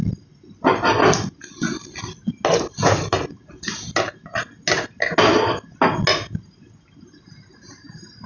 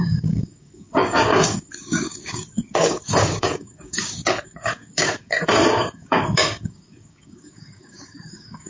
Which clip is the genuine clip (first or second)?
first